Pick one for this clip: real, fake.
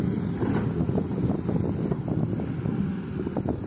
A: fake